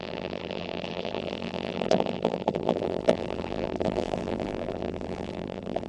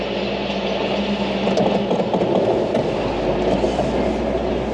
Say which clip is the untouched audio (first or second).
second